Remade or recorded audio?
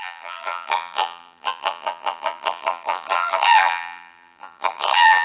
remade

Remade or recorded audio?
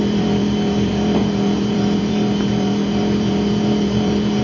remade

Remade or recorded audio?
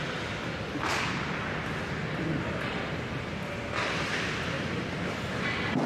recorded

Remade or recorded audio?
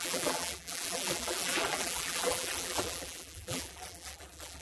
remade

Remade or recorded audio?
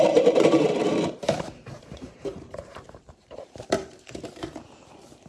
remade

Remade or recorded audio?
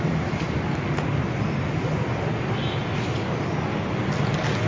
recorded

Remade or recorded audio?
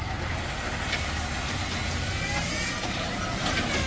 remade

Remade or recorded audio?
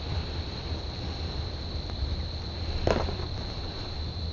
recorded